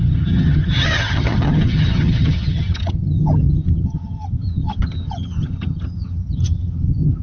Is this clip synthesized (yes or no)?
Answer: yes